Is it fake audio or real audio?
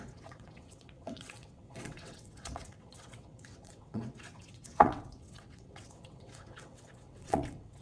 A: fake